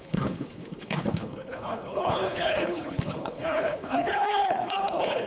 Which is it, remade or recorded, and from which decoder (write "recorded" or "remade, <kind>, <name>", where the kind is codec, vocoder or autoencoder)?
remade, codec, HILCodec